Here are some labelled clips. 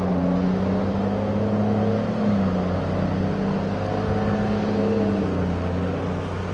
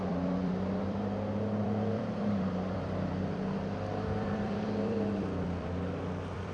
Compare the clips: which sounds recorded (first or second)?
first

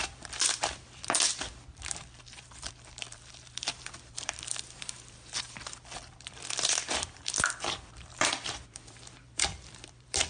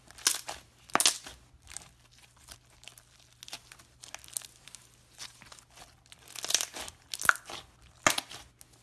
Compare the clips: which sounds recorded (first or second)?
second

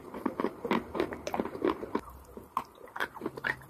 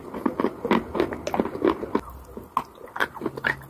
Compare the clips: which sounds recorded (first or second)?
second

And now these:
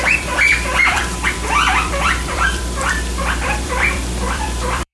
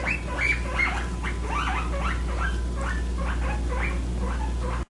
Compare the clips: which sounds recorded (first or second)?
second